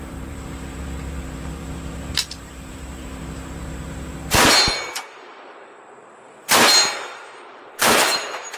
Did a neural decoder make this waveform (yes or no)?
yes